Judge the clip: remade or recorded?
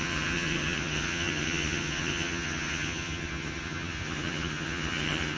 remade